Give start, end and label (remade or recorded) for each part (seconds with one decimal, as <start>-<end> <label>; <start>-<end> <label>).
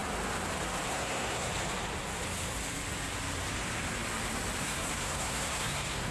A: 0.0-0.9 recorded; 0.9-1.5 remade; 1.5-4.6 recorded; 4.6-6.1 remade